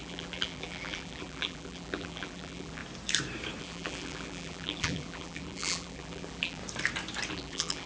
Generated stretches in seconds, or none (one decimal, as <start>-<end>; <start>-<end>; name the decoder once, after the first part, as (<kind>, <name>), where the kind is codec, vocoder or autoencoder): 0.0-2.8 (vocoder, BigVGAN v2); 3.6-6.6; 7.3-7.9